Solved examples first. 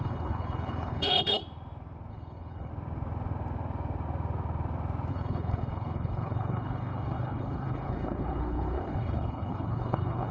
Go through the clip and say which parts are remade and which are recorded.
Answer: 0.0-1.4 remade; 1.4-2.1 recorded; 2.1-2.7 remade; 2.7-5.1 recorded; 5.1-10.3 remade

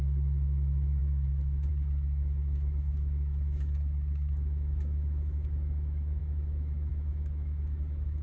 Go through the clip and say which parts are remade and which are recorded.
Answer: 0.0-8.2 remade

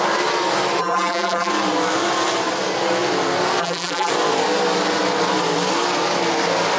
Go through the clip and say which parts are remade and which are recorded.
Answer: 0.0-0.8 recorded; 0.8-1.5 remade; 1.5-3.6 recorded; 3.6-4.1 remade; 4.1-6.8 recorded